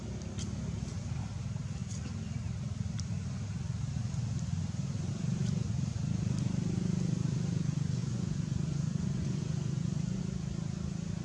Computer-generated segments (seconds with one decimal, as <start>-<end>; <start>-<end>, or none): 8.0-10.2